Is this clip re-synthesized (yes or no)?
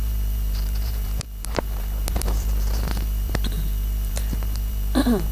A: yes